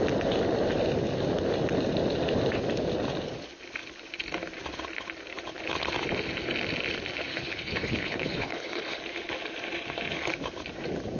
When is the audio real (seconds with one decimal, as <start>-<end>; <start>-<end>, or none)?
0.0-7.3; 9.0-11.2